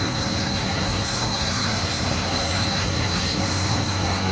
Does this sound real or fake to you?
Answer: fake